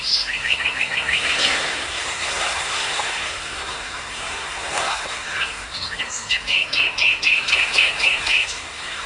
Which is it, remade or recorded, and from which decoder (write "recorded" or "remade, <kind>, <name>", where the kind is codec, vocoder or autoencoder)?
remade, codec, SNAC